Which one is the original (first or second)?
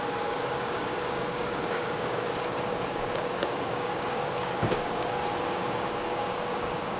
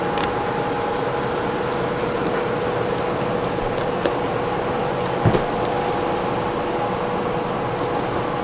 second